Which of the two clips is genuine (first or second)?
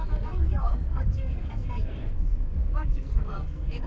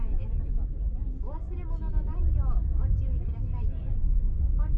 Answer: second